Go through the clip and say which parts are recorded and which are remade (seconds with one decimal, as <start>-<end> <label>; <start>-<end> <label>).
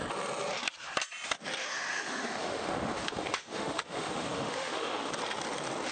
0.0-1.6 recorded; 1.6-5.1 remade; 5.1-5.9 recorded